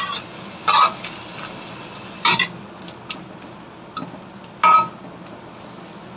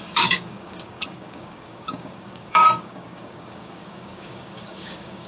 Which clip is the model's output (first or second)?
second